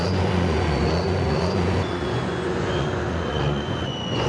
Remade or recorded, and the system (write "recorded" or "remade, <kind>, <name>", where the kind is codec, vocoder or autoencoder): remade, vocoder, Vocos